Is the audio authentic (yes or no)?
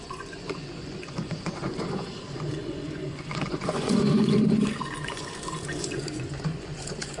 no